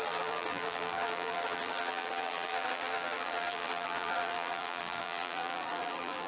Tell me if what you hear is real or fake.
fake